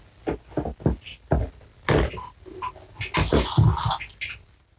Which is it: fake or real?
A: real